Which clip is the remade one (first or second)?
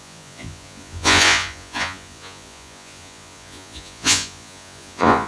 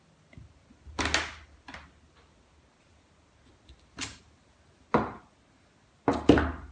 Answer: first